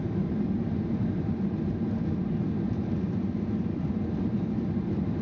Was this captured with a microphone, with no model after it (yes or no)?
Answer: yes